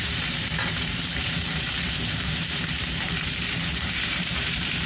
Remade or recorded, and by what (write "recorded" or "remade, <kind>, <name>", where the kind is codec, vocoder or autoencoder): remade, vocoder, BigVGAN v2